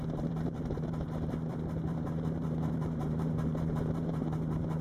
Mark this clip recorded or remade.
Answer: remade